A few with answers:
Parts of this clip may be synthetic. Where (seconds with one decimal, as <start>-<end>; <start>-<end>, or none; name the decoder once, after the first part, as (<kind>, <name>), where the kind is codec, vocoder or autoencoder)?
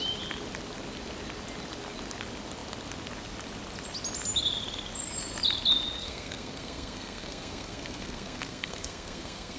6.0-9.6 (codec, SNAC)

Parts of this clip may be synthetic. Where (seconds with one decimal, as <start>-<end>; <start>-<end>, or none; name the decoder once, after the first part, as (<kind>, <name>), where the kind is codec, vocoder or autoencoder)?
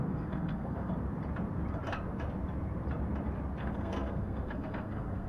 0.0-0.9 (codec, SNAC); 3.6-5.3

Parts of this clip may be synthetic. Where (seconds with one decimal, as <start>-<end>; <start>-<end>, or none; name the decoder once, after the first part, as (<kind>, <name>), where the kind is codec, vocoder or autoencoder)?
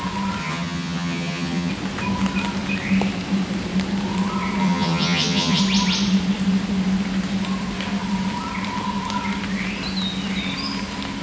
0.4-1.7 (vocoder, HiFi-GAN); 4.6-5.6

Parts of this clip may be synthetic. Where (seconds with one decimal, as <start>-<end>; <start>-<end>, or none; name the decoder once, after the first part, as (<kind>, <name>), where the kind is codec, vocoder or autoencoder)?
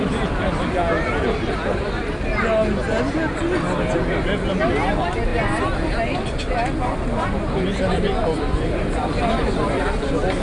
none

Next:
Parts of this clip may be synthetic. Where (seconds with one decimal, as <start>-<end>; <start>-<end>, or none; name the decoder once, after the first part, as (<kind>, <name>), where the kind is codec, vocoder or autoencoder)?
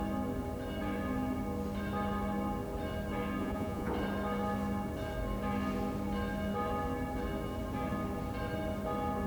3.4-3.9 (vocoder, Vocos)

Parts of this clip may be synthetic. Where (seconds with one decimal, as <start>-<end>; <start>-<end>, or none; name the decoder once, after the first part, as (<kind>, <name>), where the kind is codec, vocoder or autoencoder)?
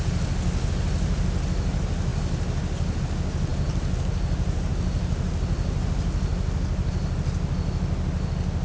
none